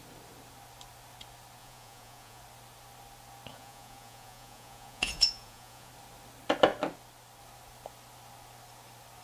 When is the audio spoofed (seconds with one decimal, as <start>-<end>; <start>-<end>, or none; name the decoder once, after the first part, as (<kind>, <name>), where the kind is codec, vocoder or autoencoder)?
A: 1.6-2.4 (vocoder, Vocos); 3.5-5.9